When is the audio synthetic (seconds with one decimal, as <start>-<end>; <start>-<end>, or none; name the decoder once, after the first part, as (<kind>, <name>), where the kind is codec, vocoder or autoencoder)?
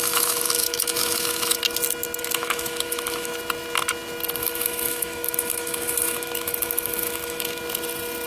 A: 0.0-1.6 (autoencoder, DAC-VAE); 2.2-3.3; 4.4-7.6